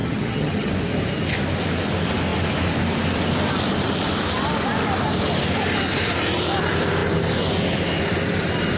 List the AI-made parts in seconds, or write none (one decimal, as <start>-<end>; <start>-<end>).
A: 0.0-0.7